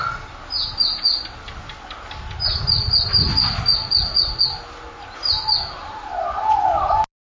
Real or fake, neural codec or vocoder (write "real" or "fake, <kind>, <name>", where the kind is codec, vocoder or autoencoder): real